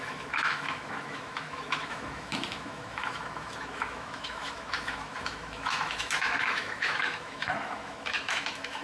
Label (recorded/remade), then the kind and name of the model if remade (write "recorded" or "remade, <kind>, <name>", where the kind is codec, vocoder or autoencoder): remade, autoencoder, DAC-VAE